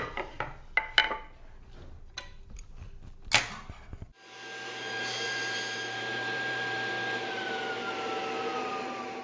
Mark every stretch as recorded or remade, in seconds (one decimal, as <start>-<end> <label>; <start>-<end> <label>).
0.0-4.1 recorded; 4.1-6.9 remade; 6.9-8.5 recorded; 8.5-9.2 remade